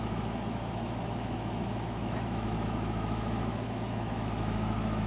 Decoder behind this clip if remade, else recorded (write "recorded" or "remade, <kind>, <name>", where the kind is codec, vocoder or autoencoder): remade, autoencoder, DAC-VAE